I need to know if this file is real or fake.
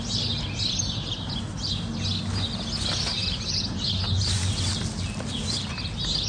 real